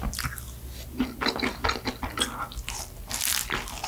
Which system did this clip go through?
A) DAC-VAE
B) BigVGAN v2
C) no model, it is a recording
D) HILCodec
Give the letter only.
C